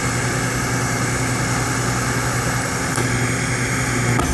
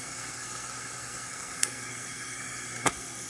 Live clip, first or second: first